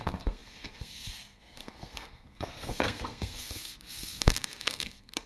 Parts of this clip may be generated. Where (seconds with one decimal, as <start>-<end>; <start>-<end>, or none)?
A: 0.0-5.3